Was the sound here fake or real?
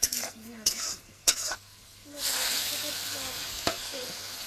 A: fake